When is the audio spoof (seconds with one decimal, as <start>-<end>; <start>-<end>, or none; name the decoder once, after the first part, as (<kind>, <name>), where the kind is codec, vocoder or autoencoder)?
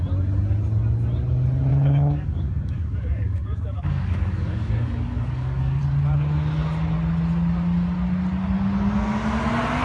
1.7-5.8 (codec, DAC)